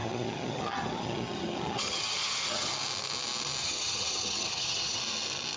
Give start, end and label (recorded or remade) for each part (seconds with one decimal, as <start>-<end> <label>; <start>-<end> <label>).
0.0-2.7 remade; 2.7-3.6 recorded; 3.6-5.0 remade; 5.0-5.6 recorded